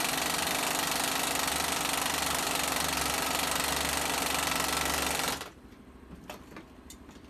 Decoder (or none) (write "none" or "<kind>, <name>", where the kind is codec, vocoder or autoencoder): none